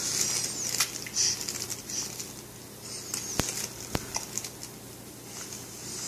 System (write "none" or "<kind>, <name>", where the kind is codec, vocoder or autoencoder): none